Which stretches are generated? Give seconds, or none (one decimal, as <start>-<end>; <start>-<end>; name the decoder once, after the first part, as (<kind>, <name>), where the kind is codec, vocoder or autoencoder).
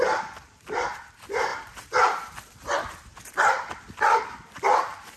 none